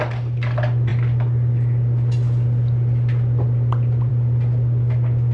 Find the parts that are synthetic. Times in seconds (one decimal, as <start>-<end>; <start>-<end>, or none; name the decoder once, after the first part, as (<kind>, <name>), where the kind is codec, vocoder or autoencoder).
none